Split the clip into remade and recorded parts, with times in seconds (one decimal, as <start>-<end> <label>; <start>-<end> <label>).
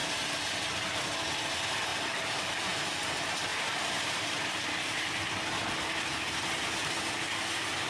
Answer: 0.0-3.5 recorded; 3.5-4.4 remade; 4.4-7.9 recorded